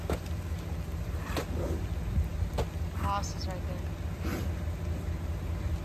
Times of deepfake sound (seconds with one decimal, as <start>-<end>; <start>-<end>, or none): none

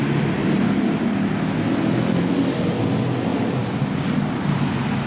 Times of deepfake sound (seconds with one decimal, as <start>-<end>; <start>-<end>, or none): none

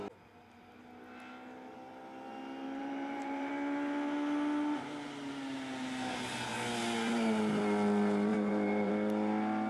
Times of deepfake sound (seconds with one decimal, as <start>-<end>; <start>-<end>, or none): 2.8-3.5; 8.3-8.9